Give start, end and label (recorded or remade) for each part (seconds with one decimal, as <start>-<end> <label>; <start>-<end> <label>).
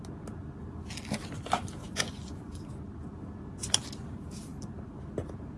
0.0-1.8 recorded; 1.8-2.6 remade; 2.6-5.6 recorded